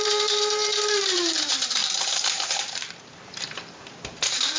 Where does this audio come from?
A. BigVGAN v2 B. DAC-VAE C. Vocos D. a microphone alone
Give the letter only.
A